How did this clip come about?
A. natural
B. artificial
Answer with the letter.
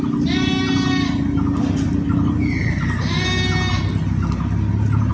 A